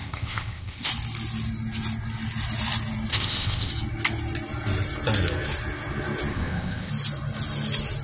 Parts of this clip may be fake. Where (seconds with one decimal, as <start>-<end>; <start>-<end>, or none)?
0.0-0.9; 3.1-3.7; 6.3-6.9